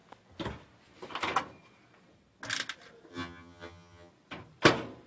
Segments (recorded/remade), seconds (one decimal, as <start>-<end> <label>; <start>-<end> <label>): 0.0-3.1 recorded; 3.1-4.1 remade; 4.1-5.1 recorded